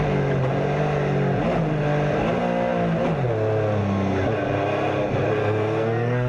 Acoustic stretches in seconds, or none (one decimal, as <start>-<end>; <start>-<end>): 0.0-5.4